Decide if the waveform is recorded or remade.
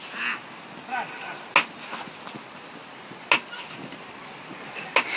recorded